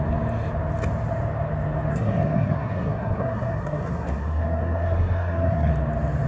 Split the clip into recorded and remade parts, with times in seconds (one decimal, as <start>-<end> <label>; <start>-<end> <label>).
0.0-1.9 recorded; 1.9-5.7 remade; 5.7-6.3 recorded